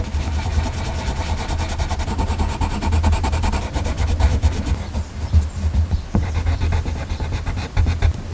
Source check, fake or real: real